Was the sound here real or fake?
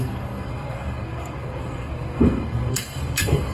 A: fake